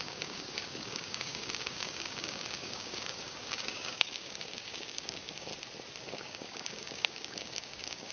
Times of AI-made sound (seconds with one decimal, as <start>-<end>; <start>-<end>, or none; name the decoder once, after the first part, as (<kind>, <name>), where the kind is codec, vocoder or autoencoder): 0.0-5.5 (codec, DAC); 6.0-8.1